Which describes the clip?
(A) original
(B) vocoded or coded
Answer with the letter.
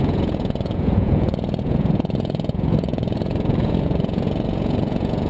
B